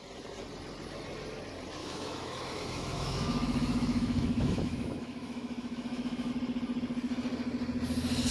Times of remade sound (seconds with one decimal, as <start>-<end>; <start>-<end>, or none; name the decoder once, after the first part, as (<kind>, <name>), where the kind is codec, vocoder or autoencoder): 1.8-6.3 (autoencoder, DAC-VAE)